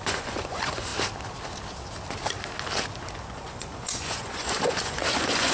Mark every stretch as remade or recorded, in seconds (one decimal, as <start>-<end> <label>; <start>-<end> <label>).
0.0-0.9 remade; 0.9-3.2 recorded; 3.2-5.5 remade